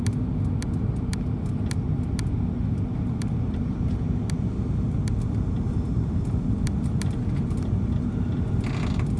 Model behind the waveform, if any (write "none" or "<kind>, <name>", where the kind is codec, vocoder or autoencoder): none